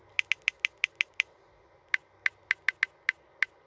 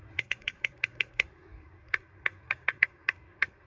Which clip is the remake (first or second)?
second